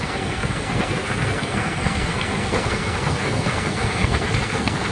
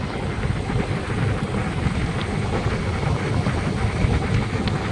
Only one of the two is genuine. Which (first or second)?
second